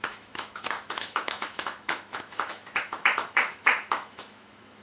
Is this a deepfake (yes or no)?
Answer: yes